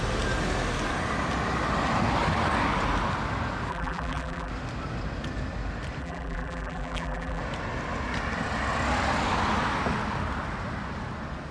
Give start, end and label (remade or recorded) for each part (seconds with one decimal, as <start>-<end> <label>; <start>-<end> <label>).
0.0-3.7 recorded; 3.7-4.5 remade; 4.5-6.0 recorded; 6.0-7.4 remade; 7.4-11.5 recorded